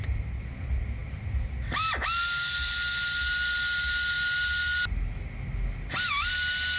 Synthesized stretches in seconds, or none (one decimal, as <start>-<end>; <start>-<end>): none